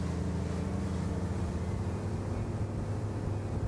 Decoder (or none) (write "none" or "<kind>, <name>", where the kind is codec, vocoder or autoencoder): none